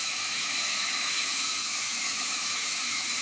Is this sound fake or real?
fake